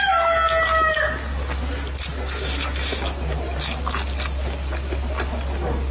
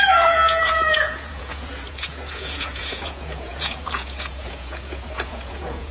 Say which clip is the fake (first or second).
second